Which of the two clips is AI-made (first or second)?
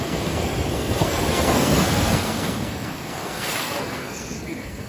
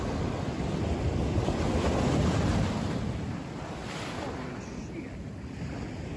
first